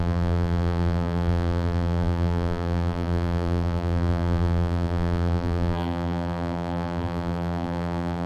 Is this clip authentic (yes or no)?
no